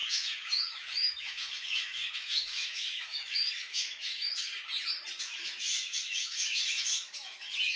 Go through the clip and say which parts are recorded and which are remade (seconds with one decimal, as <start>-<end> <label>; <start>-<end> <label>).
0.0-4.5 remade; 4.5-5.2 recorded; 5.2-7.8 remade